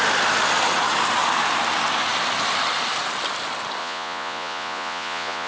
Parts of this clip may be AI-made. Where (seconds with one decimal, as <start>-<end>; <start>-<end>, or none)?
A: 3.8-5.5